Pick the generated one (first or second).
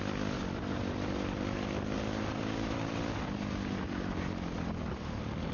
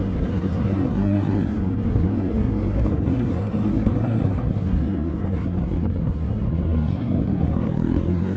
second